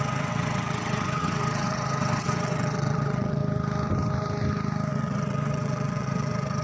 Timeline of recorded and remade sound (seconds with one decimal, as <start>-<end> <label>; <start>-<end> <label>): 0.0-3.4 remade; 3.4-4.9 recorded; 4.9-6.6 remade